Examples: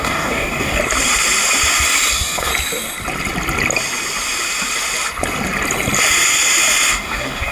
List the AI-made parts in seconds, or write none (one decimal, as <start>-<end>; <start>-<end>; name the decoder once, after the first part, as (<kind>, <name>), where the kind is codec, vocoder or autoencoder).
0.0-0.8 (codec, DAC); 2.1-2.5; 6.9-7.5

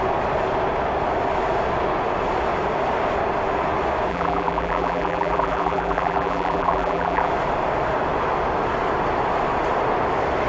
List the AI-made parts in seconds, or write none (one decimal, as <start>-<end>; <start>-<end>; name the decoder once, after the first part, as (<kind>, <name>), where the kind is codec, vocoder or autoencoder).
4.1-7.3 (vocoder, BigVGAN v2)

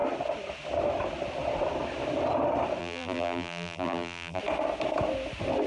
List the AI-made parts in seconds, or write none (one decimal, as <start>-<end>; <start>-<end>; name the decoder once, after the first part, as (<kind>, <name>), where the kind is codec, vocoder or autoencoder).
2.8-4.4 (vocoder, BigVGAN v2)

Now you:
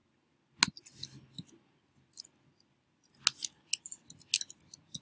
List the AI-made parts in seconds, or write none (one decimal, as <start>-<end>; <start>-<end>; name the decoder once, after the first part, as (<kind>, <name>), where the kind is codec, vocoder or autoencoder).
none

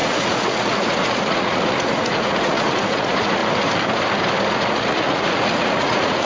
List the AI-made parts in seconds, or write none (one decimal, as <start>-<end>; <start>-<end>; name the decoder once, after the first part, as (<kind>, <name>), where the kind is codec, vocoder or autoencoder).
0.0-3.4 (vocoder, Vocos); 4.5-6.2

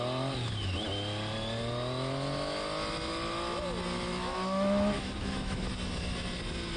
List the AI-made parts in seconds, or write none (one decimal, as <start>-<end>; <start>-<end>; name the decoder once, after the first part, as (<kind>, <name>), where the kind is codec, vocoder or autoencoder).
4.1-5.7 (autoencoder, DAC-VAE)

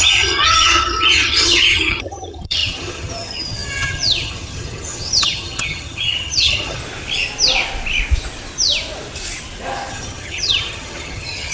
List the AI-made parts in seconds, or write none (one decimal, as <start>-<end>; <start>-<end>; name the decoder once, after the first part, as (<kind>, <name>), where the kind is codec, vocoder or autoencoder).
0.0-6.8 (vocoder, HiFi-GAN); 9.9-11.5